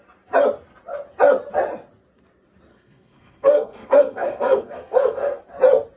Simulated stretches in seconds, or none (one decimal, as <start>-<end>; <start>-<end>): 2.7-5.4